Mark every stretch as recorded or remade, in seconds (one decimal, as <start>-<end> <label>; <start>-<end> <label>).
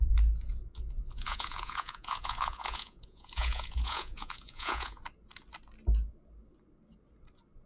0.0-0.5 recorded; 0.5-5.0 remade; 5.0-7.7 recorded